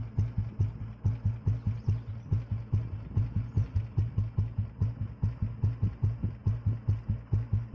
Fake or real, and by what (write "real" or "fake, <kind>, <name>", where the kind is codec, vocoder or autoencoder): real